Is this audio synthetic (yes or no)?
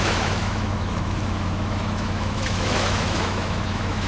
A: yes